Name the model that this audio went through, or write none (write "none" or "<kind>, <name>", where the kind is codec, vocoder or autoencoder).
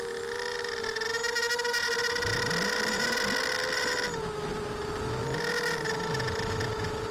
none